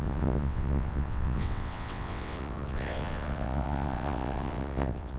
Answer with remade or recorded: remade